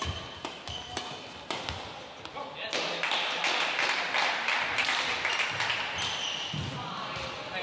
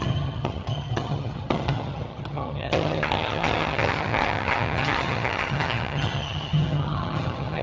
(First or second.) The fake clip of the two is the second